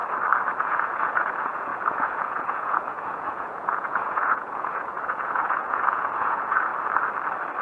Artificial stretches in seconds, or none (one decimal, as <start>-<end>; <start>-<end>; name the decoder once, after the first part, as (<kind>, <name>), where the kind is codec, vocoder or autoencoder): 0.6-6.7 (vocoder, Vocos)